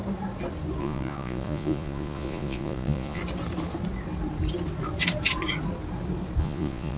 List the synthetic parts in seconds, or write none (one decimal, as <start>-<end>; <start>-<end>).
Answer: 0.8-3.2; 6.4-7.0